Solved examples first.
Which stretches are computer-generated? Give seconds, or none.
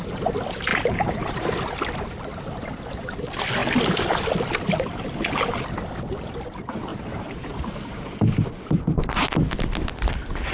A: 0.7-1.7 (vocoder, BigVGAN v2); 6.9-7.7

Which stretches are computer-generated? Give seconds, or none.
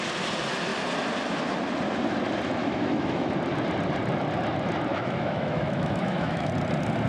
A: 2.6-3.3 (autoencoder, DAC-VAE); 4.9-6.5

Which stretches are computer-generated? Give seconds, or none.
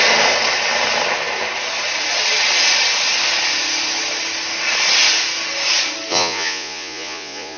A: 6.1-7.6 (vocoder, Vocos)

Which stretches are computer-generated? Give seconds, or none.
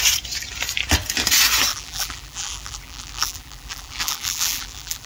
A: 1.7-5.1 (vocoder, BigVGAN v2)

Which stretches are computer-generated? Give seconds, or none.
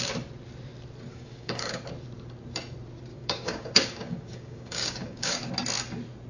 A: 1.1-1.8 (codec, DAC); 3.1-5.5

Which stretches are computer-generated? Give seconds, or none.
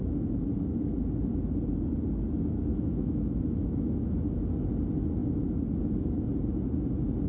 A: 2.7-4.4 (autoencoder, DAC-VAE)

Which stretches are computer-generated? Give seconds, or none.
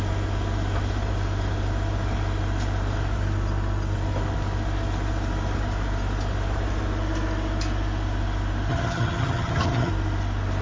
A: 8.7-9.9 (vocoder, HiFi-GAN)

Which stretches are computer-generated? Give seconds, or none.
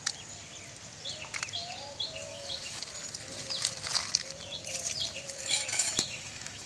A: 2.3-2.8 (autoencoder, DAC-VAE); 5.4-6.7